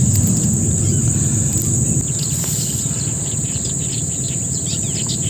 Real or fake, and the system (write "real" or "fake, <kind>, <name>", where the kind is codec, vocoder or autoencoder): real